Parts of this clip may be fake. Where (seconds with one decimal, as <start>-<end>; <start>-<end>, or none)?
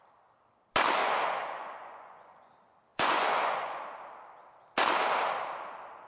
1.0-2.5; 2.9-3.8